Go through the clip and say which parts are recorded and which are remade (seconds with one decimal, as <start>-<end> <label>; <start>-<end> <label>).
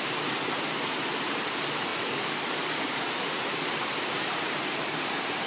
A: 0.0-5.5 remade